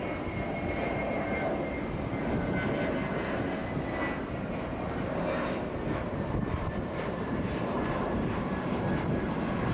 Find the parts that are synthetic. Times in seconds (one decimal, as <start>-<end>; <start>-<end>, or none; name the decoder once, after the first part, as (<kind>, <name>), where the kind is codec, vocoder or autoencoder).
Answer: 0.0-3.6 (vocoder, BigVGAN v2); 4.4-9.7